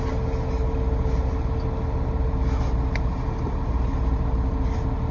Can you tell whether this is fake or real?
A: real